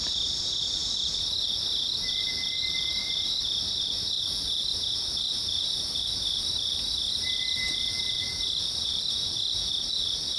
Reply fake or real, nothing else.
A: real